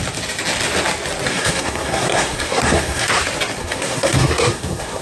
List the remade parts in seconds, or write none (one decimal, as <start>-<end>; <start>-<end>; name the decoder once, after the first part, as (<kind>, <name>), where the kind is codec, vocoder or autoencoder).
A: 1.3-3.2 (codec, SNAC); 3.6-5.0